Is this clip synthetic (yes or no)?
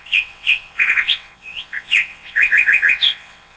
yes